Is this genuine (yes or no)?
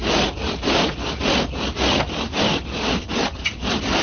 yes